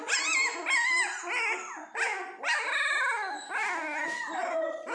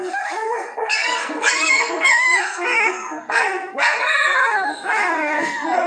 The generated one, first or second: second